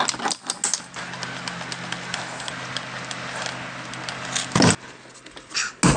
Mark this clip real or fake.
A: real